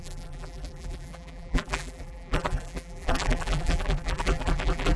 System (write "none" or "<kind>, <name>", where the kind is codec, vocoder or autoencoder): vocoder, BigVGAN v2